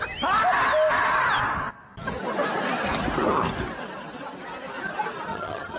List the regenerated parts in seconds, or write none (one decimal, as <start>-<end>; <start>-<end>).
5.3-5.8